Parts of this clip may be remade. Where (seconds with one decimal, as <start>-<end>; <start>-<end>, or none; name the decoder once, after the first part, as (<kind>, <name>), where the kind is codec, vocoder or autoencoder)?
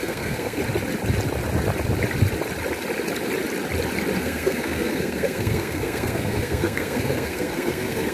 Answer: 0.0-0.6 (codec, SNAC); 4.2-8.1